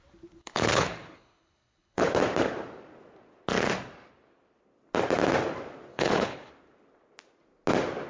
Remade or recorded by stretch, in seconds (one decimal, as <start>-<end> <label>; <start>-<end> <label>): 0.0-0.4 recorded; 0.4-2.2 remade; 2.2-5.9 recorded; 5.9-6.5 remade; 6.5-8.1 recorded